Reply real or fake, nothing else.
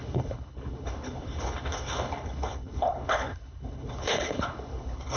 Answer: fake